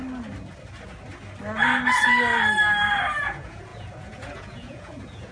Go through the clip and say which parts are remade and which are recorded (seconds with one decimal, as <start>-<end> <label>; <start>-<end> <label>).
0.0-3.2 recorded; 3.2-5.3 remade